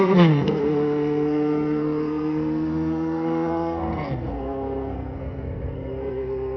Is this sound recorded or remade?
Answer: remade